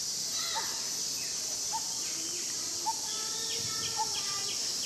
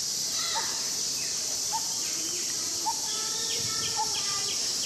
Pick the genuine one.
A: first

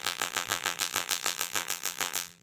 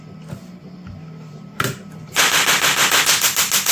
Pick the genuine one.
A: second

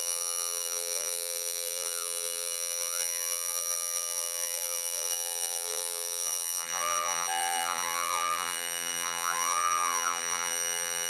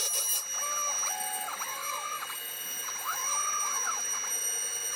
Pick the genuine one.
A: second